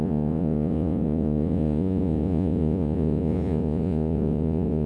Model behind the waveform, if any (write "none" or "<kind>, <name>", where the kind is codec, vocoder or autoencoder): vocoder, Vocos